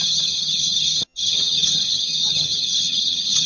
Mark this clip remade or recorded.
remade